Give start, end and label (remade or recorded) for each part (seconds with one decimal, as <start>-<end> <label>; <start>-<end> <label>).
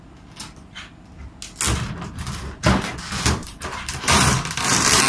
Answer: 0.0-3.4 recorded; 3.4-4.5 remade; 4.5-5.1 recorded